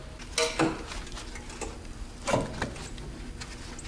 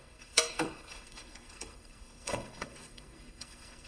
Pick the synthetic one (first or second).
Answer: second